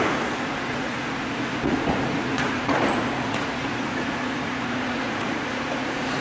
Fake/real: fake